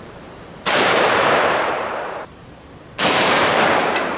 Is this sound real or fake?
fake